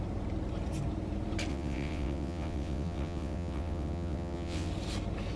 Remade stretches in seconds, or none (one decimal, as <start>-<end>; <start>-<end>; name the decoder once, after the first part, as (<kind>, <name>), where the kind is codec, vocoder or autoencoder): 1.5-4.7 (vocoder, WaveNeXt)